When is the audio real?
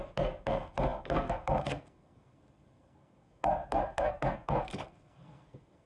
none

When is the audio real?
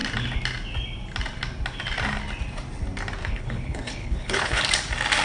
0.0-3.2; 4.6-5.2